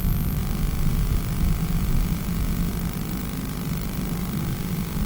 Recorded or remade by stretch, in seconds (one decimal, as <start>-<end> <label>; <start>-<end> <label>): 0.0-2.7 recorded; 2.7-4.4 remade; 4.4-5.1 recorded